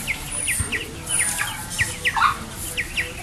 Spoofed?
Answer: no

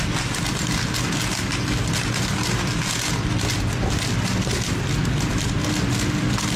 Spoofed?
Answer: no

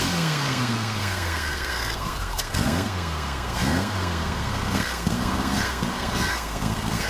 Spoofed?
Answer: yes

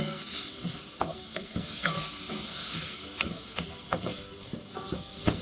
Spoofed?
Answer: yes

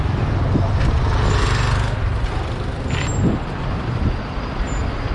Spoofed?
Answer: no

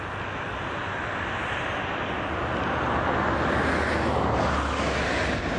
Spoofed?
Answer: no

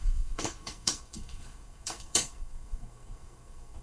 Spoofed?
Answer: yes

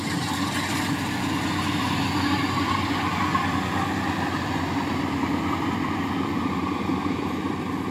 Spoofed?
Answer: no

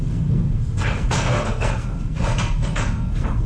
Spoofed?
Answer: yes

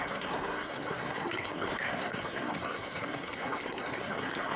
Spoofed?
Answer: yes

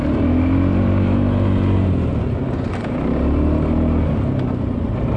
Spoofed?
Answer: no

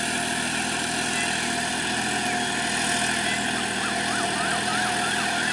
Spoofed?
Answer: no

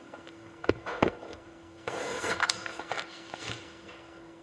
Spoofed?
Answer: yes